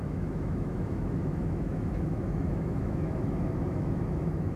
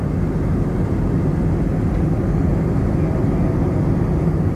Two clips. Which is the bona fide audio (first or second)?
second